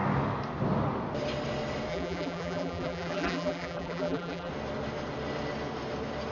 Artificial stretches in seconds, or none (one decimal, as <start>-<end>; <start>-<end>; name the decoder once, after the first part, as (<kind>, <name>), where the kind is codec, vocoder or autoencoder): 1.9-4.5 (vocoder, BigVGAN v2)